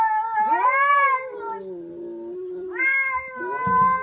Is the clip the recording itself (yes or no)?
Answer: yes